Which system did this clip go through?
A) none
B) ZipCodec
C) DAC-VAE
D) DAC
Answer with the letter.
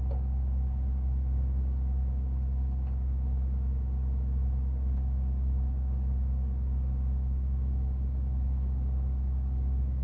D